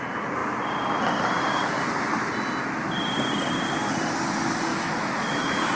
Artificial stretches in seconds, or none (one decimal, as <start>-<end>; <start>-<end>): 4.7-5.8